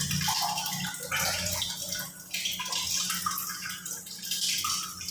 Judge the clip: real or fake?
real